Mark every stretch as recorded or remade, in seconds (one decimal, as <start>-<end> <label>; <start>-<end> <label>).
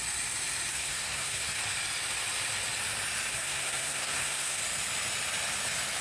0.0-0.7 recorded; 0.7-1.6 remade; 1.6-3.3 recorded; 3.3-4.6 remade; 4.6-6.0 recorded